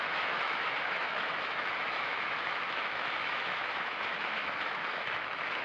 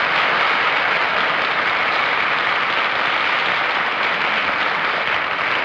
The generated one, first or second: first